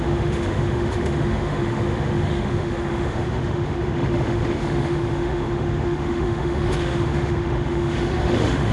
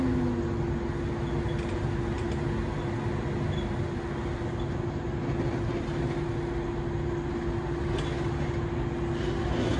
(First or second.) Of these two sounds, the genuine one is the second